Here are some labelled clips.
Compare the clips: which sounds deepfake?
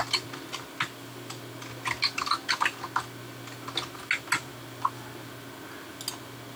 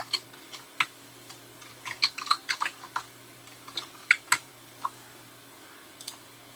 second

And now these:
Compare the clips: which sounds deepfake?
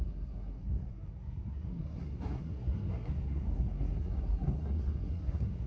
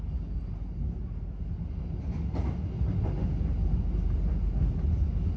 first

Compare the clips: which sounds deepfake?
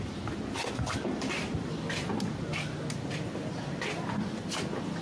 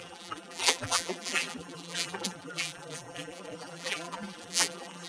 second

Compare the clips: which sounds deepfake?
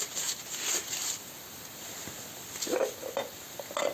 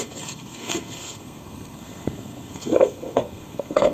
second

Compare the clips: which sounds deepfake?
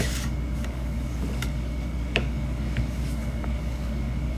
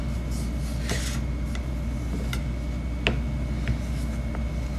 first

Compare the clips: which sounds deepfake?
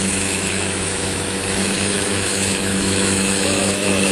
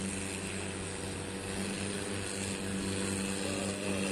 first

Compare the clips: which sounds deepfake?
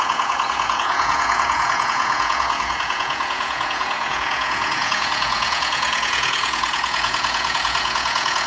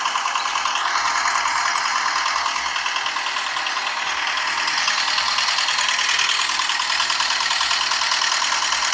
first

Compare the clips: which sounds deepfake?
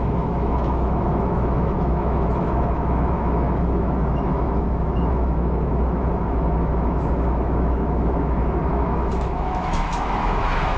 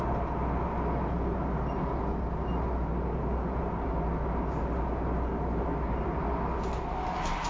first